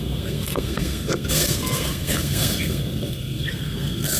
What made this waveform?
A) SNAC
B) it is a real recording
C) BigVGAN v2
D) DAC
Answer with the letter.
A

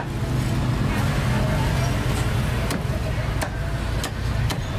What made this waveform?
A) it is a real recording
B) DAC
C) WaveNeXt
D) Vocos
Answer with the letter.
A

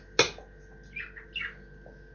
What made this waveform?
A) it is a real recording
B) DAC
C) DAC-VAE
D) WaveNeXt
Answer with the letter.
A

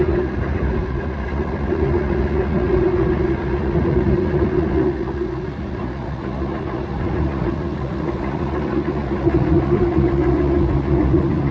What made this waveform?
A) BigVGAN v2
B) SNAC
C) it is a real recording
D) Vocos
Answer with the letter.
D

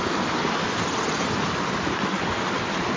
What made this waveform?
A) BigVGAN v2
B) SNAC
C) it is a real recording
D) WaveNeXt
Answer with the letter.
C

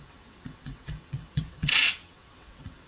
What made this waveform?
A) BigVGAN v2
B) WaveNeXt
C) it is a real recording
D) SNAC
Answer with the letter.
B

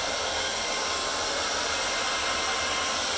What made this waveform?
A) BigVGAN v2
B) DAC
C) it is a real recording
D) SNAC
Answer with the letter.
C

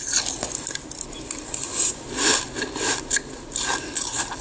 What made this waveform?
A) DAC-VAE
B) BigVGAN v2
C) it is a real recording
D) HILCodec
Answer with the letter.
C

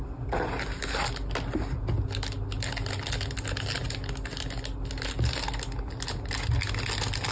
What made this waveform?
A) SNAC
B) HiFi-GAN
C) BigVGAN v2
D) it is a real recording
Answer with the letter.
D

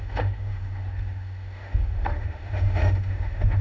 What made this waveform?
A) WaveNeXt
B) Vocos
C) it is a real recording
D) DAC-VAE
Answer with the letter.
D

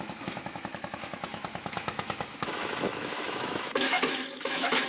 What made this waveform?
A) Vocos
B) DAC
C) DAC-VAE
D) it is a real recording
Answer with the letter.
C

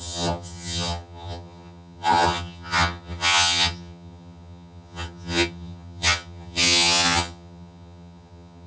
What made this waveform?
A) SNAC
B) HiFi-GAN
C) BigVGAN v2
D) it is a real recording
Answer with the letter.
B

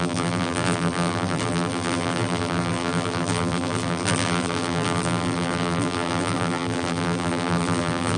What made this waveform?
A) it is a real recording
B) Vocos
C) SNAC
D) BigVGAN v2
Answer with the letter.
D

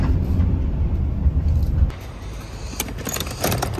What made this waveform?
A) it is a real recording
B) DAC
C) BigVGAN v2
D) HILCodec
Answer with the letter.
A